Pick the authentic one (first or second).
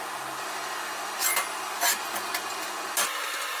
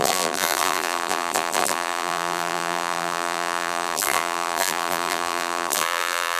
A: first